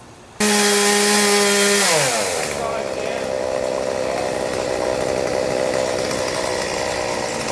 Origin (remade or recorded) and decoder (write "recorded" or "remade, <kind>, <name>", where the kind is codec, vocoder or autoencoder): recorded